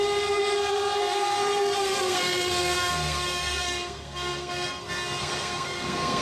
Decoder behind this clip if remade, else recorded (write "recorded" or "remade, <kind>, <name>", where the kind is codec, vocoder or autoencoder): remade, codec, SNAC